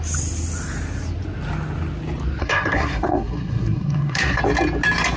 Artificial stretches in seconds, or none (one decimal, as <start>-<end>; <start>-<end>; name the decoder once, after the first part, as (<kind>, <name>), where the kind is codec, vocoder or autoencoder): 2.4-4.4 (codec, SNAC)